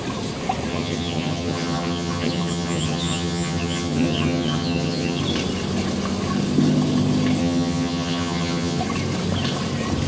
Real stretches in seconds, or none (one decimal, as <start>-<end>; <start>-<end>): 0.0-0.7; 5.2-7.4; 8.8-10.1